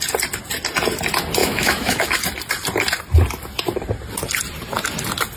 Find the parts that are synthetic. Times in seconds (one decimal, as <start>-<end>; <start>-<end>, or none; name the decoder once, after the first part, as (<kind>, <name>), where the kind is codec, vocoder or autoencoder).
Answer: 1.4-2.2 (autoencoder, DAC-VAE)